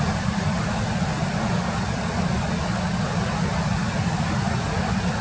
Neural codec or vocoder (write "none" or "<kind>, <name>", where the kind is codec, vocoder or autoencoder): none